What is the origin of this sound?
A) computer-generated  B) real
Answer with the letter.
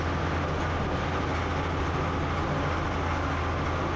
B